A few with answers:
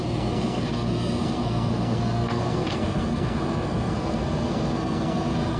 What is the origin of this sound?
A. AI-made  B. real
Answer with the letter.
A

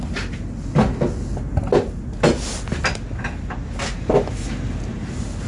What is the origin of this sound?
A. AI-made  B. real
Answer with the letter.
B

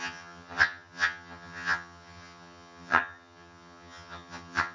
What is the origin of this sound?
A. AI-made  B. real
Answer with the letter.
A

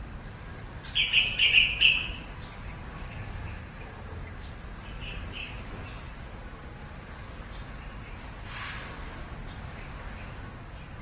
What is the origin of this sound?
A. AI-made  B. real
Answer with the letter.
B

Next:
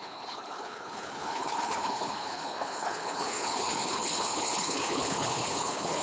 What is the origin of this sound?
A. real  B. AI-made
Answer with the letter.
B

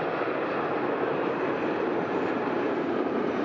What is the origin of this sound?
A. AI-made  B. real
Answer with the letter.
B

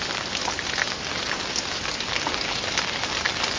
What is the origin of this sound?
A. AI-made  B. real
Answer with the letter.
B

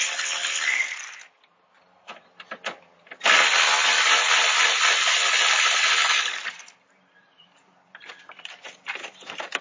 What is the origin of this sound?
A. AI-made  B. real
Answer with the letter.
A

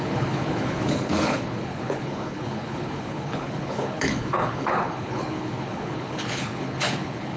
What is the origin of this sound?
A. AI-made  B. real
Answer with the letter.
A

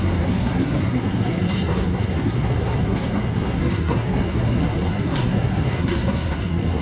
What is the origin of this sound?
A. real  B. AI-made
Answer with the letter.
B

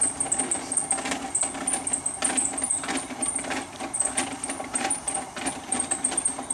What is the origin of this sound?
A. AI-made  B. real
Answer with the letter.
B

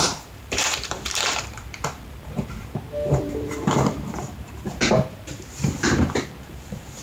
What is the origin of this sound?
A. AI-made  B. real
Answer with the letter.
A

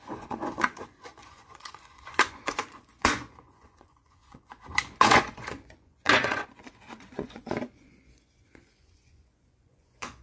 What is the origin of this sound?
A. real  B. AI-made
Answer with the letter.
B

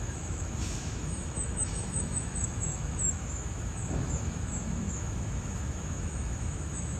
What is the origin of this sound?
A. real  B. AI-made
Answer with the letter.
B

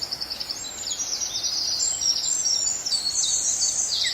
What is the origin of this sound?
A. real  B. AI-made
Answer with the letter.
A